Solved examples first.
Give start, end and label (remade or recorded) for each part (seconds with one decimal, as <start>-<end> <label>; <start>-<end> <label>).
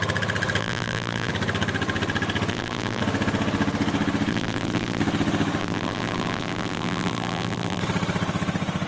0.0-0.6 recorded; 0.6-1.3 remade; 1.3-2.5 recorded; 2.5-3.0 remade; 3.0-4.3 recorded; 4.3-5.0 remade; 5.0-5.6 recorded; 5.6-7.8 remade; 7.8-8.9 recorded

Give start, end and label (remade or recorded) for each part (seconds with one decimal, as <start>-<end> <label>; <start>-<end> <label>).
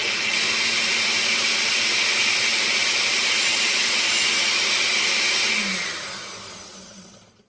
0.0-3.5 recorded; 3.5-4.0 remade; 4.0-7.5 recorded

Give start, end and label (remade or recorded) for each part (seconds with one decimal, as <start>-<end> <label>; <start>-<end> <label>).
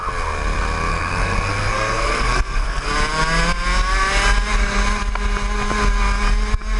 0.0-0.9 recorded; 0.9-2.9 remade; 2.9-6.8 recorded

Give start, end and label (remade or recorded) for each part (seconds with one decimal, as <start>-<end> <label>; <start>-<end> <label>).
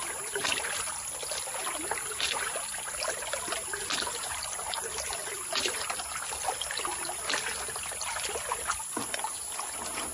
0.0-10.1 recorded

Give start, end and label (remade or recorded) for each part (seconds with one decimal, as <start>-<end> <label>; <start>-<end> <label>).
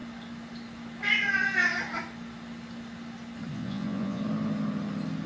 0.0-3.5 recorded; 3.5-4.2 remade; 4.2-5.3 recorded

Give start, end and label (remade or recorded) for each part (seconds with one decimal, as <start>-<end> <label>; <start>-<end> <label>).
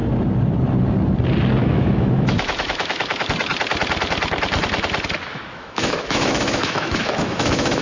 0.0-1.6 recorded; 1.6-3.3 remade; 3.3-5.3 recorded; 5.3-7.8 remade